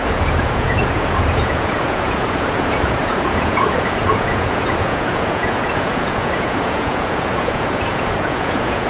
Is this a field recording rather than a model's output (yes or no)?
no